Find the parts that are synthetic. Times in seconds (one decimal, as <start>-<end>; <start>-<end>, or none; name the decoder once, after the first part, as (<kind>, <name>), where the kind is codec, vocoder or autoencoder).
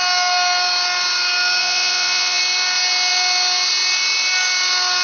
1.6-2.4 (vocoder, Vocos)